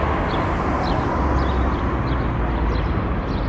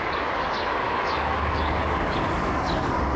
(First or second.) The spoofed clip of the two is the second